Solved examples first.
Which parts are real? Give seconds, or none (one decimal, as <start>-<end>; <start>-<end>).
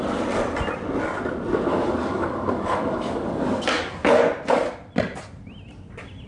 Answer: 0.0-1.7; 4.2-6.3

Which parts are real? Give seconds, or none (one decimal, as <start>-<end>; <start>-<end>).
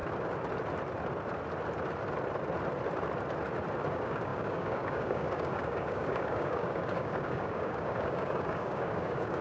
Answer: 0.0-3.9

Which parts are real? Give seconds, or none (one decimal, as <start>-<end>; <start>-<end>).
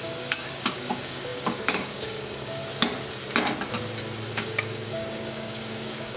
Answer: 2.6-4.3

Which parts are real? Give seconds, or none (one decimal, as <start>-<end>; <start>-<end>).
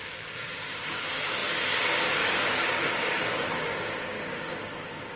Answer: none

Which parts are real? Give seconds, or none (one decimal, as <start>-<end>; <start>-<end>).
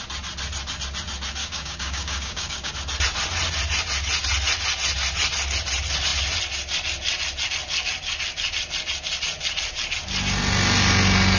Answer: 0.0-1.4; 2.7-11.4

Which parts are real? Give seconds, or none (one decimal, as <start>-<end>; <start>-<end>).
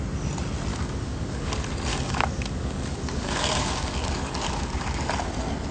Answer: 0.0-0.7; 1.5-1.9; 5.3-5.7